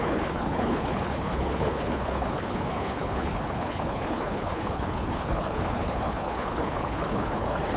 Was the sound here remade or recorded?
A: remade